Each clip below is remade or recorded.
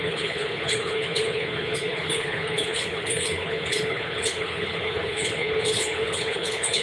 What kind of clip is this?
remade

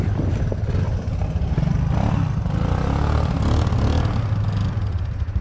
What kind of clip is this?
recorded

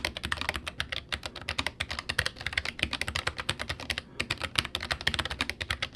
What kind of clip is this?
recorded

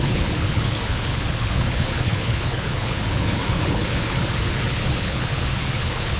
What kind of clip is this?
remade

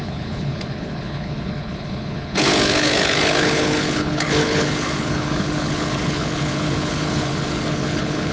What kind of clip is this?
remade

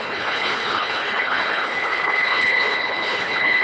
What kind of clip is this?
remade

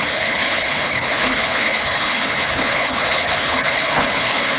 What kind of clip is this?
remade